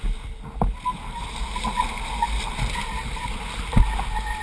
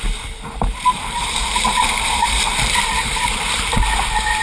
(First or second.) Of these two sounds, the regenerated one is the second